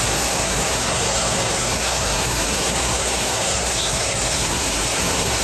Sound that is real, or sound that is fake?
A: fake